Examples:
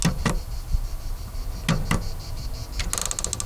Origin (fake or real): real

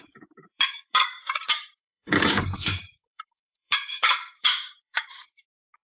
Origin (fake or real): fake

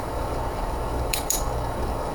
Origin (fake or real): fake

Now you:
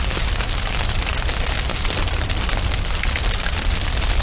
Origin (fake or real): real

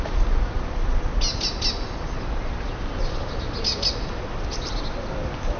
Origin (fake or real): real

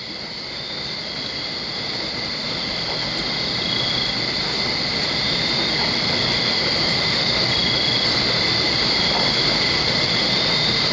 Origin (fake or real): real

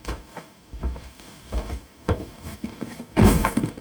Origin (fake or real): fake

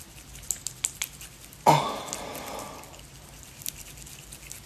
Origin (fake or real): real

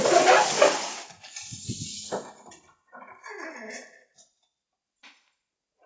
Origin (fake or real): real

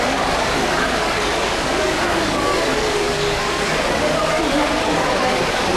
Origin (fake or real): fake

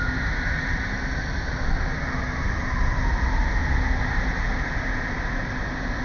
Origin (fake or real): real